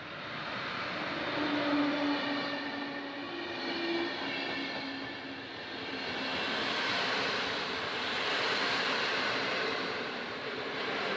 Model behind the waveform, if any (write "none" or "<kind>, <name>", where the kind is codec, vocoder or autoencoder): none